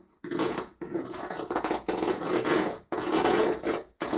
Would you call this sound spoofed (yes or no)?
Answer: yes